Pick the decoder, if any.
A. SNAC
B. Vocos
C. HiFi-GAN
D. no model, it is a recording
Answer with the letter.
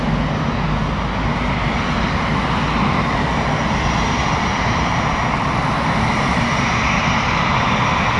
D